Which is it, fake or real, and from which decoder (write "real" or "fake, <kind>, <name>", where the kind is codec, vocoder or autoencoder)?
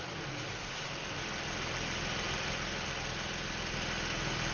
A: real